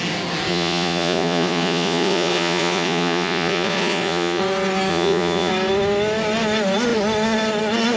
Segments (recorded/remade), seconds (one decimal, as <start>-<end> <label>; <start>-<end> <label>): 0.0-0.5 recorded; 0.5-4.4 remade; 4.4-4.9 recorded; 4.9-5.5 remade; 5.5-8.0 recorded